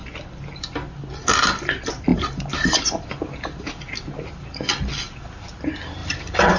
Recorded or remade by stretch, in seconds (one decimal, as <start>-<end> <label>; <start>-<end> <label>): 0.0-2.1 recorded; 2.1-4.7 remade; 4.7-6.0 recorded; 6.0-6.6 remade